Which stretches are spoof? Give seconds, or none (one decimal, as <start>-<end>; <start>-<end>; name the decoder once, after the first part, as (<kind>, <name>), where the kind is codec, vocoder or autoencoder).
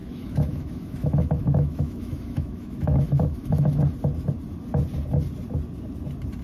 0.0-3.8 (autoencoder, DAC-VAE)